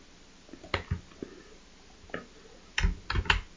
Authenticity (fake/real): real